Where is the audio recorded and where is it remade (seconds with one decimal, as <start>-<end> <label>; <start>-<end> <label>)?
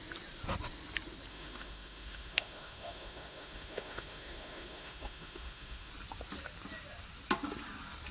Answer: 0.0-1.3 recorded; 1.3-5.9 remade; 5.9-8.1 recorded